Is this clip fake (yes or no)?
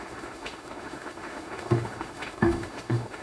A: yes